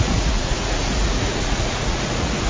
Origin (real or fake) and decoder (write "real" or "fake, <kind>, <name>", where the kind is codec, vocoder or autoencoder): fake, vocoder, Vocos